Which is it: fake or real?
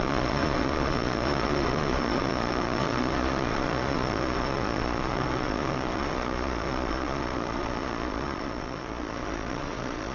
fake